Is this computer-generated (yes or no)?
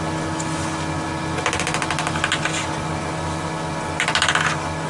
no